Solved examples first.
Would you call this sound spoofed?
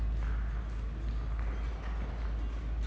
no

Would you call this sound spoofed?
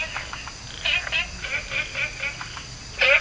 no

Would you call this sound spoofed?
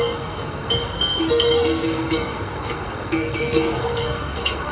yes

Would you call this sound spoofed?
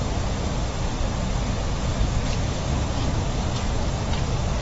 no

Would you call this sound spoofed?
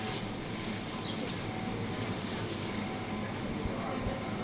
no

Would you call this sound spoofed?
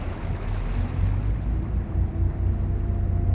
no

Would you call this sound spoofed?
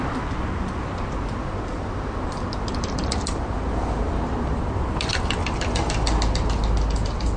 no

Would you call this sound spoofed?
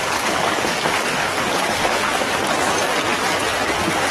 yes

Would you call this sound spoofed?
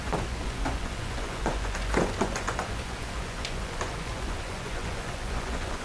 yes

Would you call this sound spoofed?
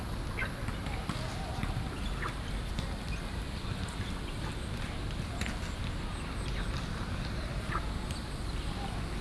no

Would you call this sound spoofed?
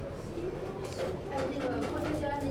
yes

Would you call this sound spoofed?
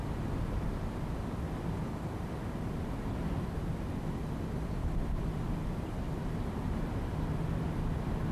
no